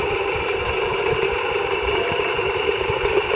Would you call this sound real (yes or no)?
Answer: no